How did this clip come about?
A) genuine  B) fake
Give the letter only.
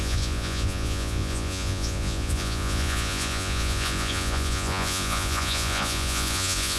B